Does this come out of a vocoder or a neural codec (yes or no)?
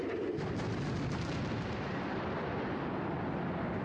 no